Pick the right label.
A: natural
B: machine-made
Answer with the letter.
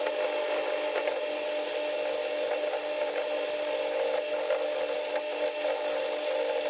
A